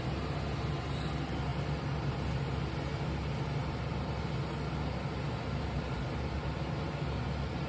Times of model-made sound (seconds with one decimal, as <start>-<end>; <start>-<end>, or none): none